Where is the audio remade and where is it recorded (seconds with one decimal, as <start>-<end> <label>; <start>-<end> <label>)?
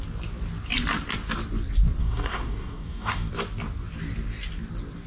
0.0-2.0 recorded; 2.0-3.3 remade; 3.3-5.1 recorded